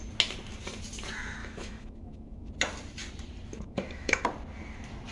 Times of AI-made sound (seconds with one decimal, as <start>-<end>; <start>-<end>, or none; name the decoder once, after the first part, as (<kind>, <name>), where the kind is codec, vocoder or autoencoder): 1.4-2.5 (autoencoder, DAC-VAE); 3.5-4.2